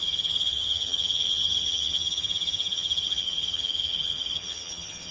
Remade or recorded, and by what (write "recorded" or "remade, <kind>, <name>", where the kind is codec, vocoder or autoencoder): remade, vocoder, HiFi-GAN